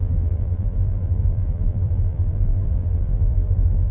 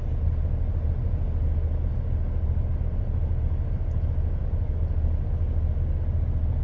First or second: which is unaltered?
second